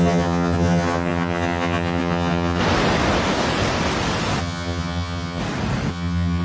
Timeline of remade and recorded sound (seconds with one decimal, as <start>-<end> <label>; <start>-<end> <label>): 0.0-2.6 remade; 2.6-4.4 recorded; 4.4-5.4 remade; 5.4-5.9 recorded; 5.9-6.4 remade